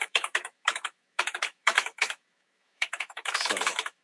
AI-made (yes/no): yes